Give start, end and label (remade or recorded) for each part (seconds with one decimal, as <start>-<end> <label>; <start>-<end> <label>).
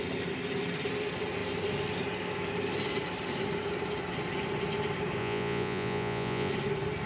0.0-5.2 recorded; 5.2-6.5 remade; 6.5-7.1 recorded